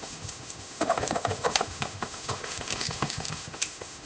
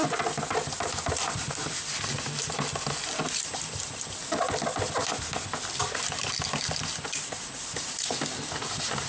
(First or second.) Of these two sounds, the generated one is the first